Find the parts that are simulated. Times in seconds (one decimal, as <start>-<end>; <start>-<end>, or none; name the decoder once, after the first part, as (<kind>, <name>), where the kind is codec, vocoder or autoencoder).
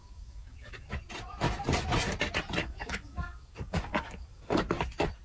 0.0-0.9 (codec, DAC); 2.6-4.6